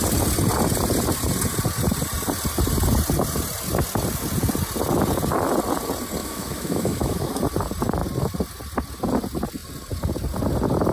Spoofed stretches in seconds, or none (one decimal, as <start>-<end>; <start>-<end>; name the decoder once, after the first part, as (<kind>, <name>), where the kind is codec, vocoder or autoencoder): 6.2-7.4 (autoencoder, DAC-VAE)